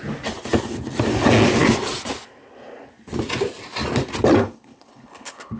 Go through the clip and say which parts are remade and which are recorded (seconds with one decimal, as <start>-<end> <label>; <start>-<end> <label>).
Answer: 0.0-4.4 recorded; 4.4-5.6 remade